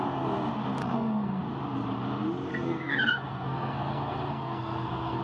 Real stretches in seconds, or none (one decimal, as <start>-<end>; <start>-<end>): 0.0-0.8; 1.4-2.5